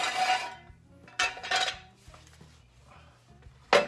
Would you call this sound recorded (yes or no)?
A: yes